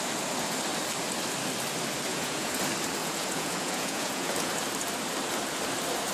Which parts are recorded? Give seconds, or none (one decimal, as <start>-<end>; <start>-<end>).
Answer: 0.0-2.1; 2.6-3.0; 4.5-6.1